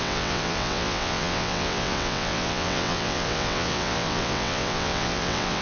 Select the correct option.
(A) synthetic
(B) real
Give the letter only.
A